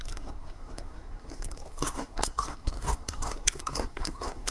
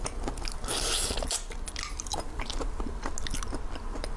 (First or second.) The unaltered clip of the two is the second